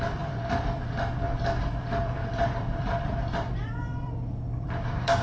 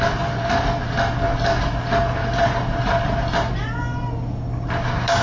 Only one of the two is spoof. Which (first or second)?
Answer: first